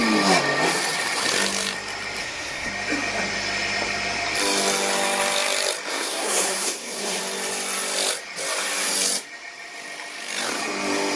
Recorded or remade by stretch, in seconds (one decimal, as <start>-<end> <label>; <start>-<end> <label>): 0.0-2.2 recorded; 2.2-2.7 remade; 2.7-5.9 recorded; 5.9-7.2 remade; 7.2-11.1 recorded

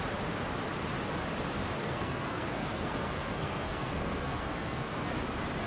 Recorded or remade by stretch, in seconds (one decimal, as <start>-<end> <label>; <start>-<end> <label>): 0.0-1.8 recorded; 1.8-5.2 remade; 5.2-5.7 recorded

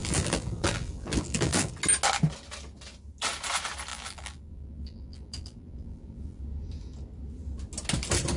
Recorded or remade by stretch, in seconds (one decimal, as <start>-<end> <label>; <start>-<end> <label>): 0.0-1.7 remade; 1.7-3.9 recorded; 3.9-6.4 remade; 6.4-8.4 recorded

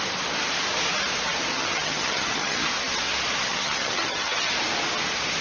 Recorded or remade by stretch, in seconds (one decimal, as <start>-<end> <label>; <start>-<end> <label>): 0.0-1.5 recorded; 1.5-2.7 remade; 2.7-3.5 recorded; 3.5-4.5 remade; 4.5-5.4 recorded

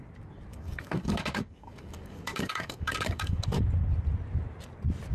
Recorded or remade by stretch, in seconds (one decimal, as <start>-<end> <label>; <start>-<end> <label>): 0.0-0.5 recorded; 0.5-3.6 remade; 3.6-5.1 recorded